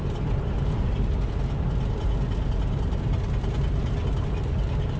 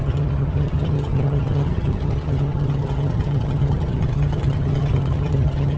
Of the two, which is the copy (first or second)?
second